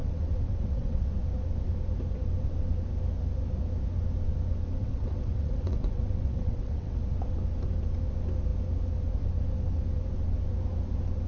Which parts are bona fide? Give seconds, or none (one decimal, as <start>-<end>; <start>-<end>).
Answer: 1.1-4.8; 7.0-11.3